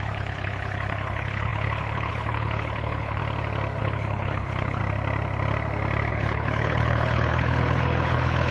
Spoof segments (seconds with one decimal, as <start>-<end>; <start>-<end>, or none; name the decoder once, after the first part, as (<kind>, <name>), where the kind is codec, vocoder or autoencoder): 0.0-3.2 (codec, HILCodec); 3.8-4.8; 6.1-8.5